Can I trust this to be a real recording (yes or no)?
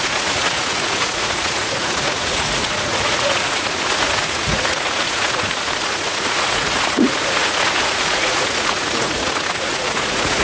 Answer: no